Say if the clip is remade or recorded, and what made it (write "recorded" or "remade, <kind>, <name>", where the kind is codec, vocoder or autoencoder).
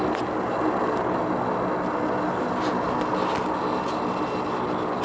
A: recorded